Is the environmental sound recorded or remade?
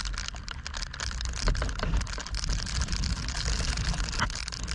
recorded